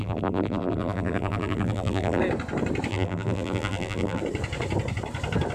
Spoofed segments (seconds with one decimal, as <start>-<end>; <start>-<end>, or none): 0.0-2.2; 2.9-4.2